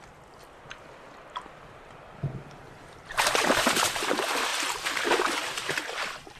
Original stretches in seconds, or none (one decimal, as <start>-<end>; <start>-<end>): 0.0-6.4